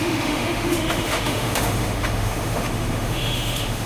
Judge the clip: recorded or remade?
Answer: remade